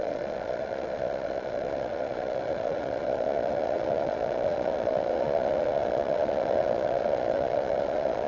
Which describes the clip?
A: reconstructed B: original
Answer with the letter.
A